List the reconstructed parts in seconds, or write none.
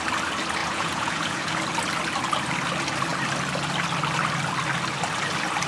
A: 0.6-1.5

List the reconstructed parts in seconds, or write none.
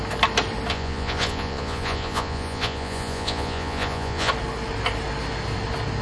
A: 0.7-4.3